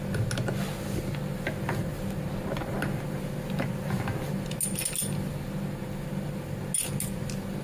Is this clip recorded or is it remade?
recorded